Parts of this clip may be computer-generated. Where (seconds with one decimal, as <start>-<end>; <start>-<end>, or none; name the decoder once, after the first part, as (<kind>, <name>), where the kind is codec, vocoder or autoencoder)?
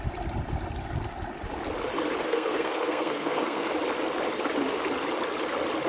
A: 2.2-3.7 (codec, SNAC)